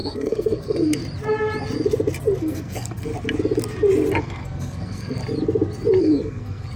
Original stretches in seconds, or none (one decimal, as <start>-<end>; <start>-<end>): 1.0-2.4; 3.1-4.2; 5.2-6.0